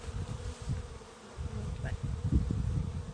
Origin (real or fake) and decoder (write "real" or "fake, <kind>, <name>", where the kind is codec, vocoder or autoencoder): real